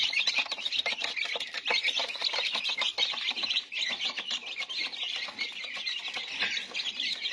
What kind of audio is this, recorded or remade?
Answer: recorded